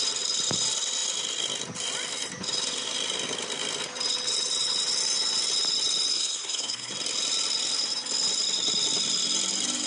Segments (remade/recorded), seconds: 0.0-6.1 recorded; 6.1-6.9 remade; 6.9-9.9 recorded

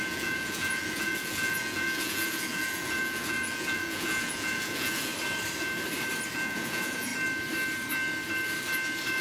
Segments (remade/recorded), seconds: 0.0-5.1 remade; 5.1-6.3 recorded; 6.3-7.1 remade; 7.1-9.2 recorded

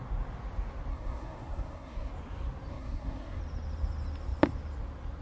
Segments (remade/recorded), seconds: 0.0-0.9 recorded; 0.9-2.1 remade; 2.1-2.7 recorded; 2.7-3.4 remade; 3.4-5.2 recorded

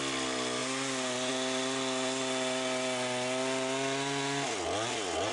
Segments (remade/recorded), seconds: 0.0-5.3 recorded